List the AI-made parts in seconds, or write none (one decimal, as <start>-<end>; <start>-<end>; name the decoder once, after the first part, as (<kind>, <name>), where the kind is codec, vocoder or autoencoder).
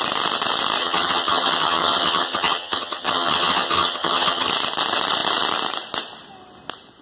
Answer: 0.8-4.5 (vocoder, HiFi-GAN)